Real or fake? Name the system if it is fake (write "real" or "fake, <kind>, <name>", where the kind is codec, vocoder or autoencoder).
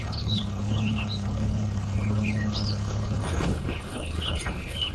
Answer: fake, codec, HILCodec